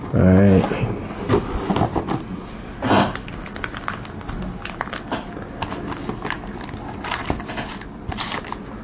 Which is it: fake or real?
real